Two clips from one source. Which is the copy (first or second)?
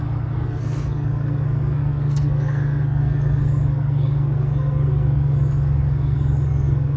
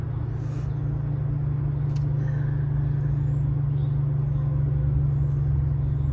first